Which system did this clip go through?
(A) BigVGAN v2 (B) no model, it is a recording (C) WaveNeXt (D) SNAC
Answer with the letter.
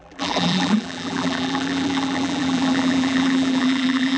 A